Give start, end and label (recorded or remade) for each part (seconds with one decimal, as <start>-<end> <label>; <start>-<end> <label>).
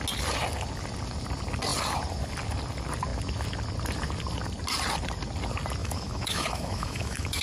0.0-5.8 recorded; 5.8-7.4 remade